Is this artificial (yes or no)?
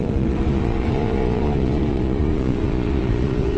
yes